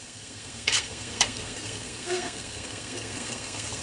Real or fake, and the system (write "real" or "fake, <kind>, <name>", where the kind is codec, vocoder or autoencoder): fake, codec, SNAC